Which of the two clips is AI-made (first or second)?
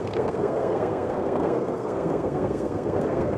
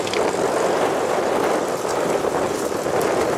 first